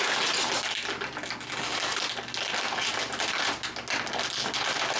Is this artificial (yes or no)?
no